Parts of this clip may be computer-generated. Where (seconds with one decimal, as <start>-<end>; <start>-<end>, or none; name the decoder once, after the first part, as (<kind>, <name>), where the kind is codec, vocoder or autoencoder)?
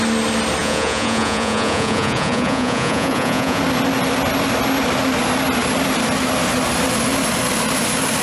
0.6-3.6 (vocoder, Vocos)